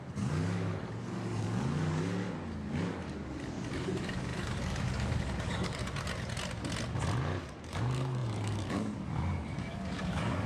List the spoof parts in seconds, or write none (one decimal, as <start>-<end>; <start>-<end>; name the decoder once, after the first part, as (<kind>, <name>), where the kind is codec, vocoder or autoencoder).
0.0-5.8 (codec, DAC); 7.4-10.5